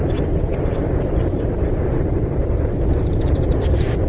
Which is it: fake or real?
fake